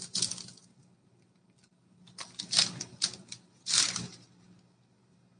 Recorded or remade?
recorded